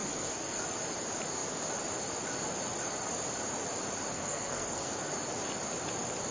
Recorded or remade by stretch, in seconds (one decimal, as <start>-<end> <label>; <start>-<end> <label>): 0.0-0.6 remade; 0.6-4.1 recorded; 4.1-5.0 remade; 5.0-6.3 recorded